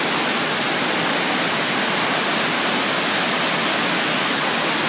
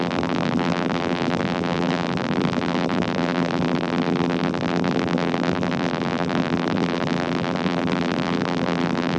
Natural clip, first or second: first